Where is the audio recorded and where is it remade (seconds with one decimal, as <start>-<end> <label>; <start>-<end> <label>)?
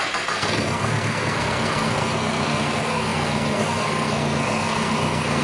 0.0-5.4 remade